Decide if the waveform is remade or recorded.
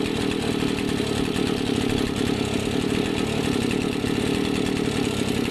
recorded